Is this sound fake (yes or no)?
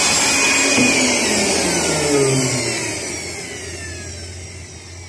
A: no